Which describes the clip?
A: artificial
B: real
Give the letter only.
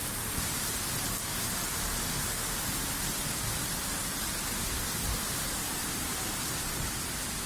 B